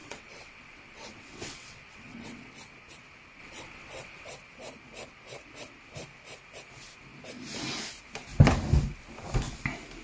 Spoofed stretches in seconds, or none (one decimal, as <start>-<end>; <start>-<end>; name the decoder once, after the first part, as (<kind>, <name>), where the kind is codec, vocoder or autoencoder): 0.0-2.5 (vocoder, WaveNeXt); 3.4-4.3